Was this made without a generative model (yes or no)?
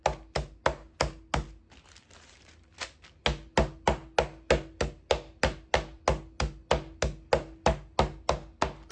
yes